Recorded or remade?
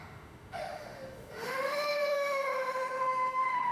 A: remade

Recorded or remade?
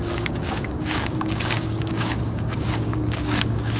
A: remade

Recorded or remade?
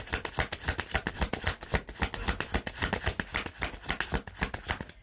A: recorded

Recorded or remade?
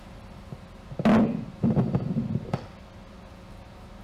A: recorded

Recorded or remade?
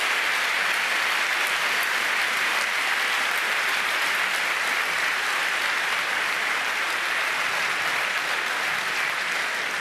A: recorded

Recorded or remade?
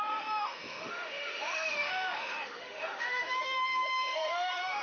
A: remade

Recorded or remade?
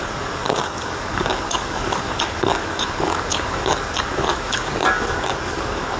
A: remade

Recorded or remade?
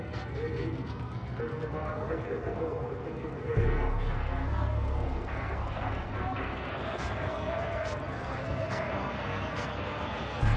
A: remade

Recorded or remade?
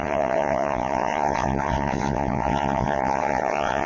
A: remade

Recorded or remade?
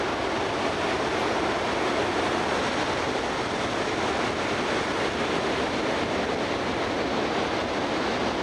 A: recorded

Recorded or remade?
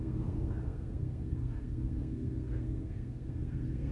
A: remade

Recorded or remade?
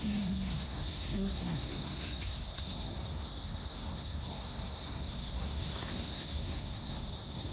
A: remade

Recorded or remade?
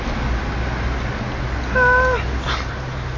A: recorded